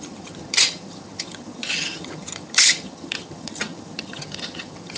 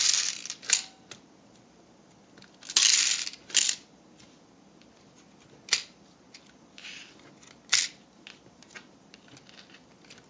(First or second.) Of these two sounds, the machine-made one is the first